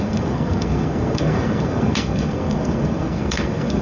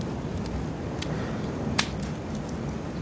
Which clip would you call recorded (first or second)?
second